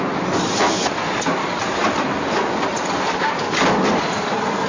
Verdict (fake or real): real